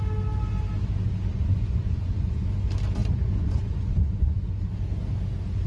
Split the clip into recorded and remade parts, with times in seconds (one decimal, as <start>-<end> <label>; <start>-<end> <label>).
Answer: 0.0-1.3 recorded; 1.3-2.4 remade; 2.4-3.0 recorded; 3.0-4.8 remade; 4.8-5.7 recorded